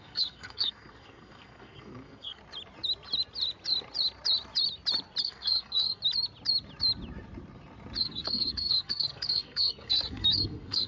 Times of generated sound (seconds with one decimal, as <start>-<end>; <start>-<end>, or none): 0.0-2.4; 5.2-6.0; 8.0-10.9